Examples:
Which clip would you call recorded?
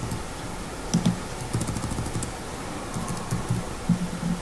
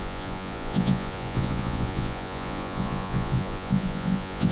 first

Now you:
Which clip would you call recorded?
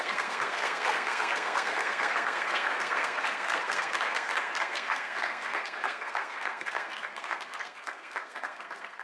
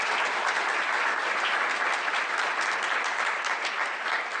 second